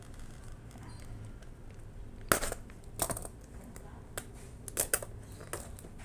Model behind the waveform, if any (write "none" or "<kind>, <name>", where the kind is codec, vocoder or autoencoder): none